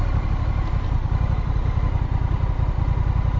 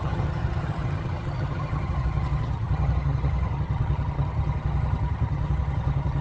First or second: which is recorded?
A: first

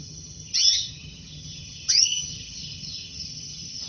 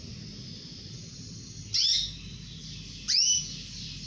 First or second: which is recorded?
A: second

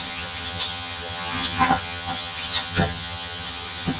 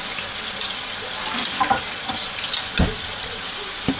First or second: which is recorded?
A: second